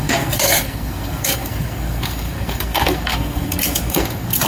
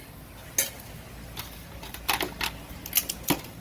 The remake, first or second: first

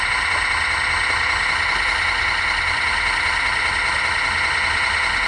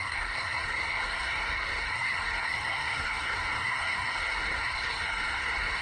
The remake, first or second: second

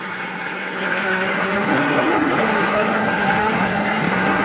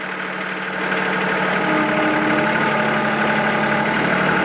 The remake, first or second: first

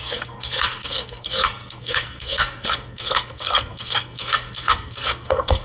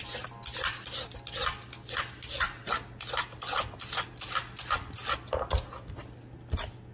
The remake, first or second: first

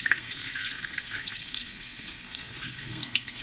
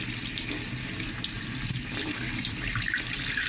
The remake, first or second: first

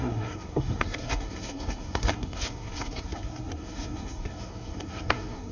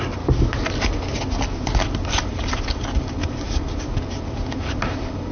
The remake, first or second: first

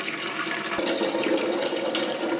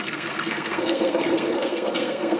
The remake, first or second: second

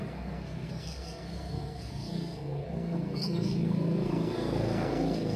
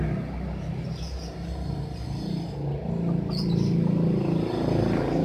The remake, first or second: first